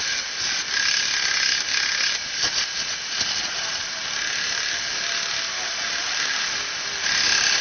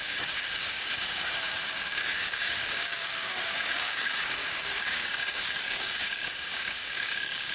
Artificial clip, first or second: second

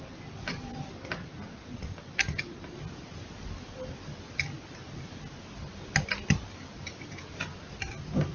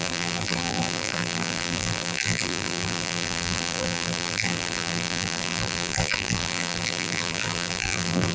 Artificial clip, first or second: second